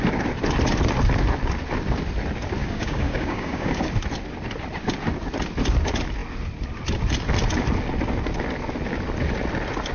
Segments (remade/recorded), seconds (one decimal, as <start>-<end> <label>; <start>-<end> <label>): 0.0-2.6 recorded; 2.6-3.9 remade; 3.9-9.9 recorded